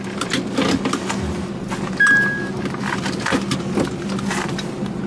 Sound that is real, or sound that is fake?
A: real